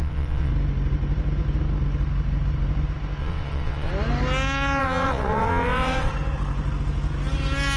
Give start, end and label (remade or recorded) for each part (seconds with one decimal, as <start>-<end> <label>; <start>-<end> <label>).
0.0-0.5 remade; 0.5-3.2 recorded; 3.2-3.9 remade; 3.9-4.8 recorded; 4.8-6.1 remade; 6.1-7.8 recorded